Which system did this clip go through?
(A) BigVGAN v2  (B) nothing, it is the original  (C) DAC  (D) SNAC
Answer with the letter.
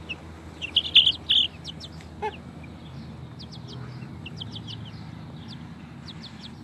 B